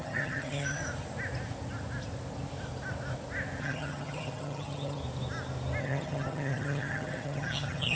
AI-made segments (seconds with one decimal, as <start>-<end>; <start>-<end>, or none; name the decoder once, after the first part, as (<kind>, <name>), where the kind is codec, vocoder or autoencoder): 0.0-0.8 (vocoder, HiFi-GAN); 3.6-5.0; 5.8-8.0